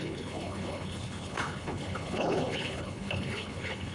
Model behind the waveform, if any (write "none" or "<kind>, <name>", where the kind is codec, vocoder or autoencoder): codec, HILCodec